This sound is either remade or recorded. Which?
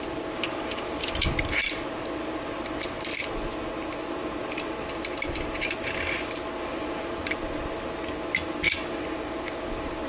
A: recorded